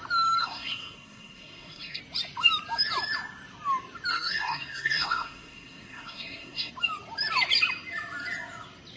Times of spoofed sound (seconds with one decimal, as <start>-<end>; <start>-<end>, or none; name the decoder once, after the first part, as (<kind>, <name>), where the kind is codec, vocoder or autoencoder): 0.4-2.0 (codec, SNAC); 4.1-6.7